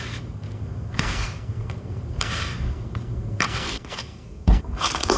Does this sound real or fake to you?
fake